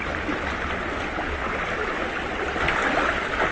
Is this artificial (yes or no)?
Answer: no